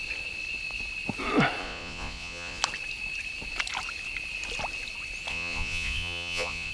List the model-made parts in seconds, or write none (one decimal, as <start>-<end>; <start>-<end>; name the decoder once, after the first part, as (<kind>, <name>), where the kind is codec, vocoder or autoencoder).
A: 1.6-2.6 (vocoder, Vocos); 5.3-6.7